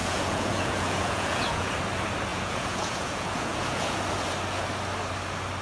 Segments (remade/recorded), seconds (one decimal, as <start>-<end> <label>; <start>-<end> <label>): 0.0-1.7 remade; 1.7-2.3 recorded; 2.3-4.0 remade; 4.0-5.6 recorded